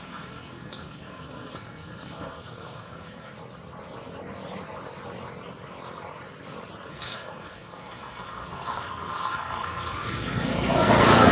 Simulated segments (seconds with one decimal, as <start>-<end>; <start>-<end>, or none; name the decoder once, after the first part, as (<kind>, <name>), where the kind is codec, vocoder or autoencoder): 0.0-3.3 (codec, SNAC); 6.9-11.3